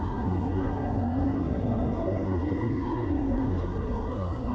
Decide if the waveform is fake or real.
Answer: fake